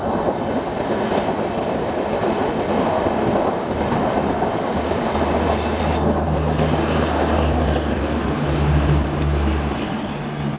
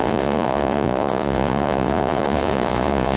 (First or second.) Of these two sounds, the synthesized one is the second